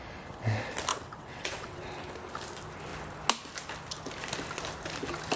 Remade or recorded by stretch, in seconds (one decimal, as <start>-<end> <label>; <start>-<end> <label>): 0.0-0.9 recorded; 0.9-1.8 remade; 1.8-5.4 recorded